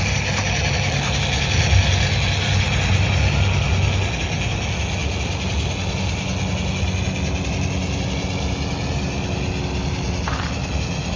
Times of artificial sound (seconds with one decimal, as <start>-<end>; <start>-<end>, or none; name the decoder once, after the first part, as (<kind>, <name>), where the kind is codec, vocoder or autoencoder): none